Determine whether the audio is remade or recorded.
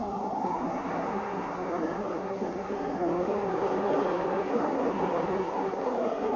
remade